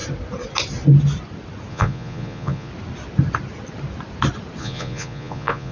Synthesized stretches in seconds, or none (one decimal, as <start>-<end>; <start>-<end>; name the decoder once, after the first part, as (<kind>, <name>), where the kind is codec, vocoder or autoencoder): 1.7-2.7 (vocoder, Vocos); 4.6-5.7